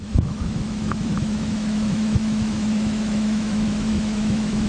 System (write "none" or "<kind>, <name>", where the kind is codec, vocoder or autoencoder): autoencoder, DAC-VAE